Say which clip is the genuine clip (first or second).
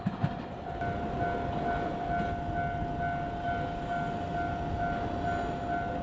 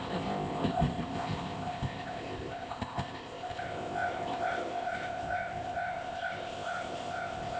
first